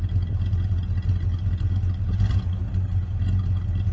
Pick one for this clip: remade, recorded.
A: recorded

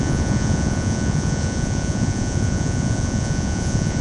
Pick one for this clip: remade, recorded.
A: remade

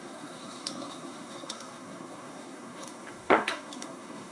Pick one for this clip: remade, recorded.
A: remade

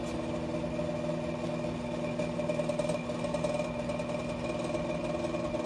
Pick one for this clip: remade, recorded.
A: recorded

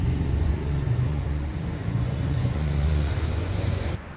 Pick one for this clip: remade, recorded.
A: remade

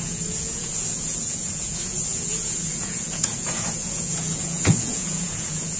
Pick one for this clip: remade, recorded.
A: remade